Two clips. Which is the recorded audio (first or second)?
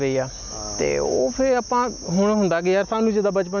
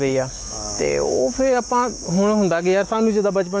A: first